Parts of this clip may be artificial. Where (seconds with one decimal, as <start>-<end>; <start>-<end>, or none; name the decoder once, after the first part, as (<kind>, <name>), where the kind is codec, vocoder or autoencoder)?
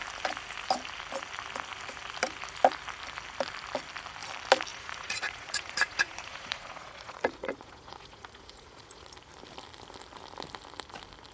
4.7-9.1 (vocoder, Vocos)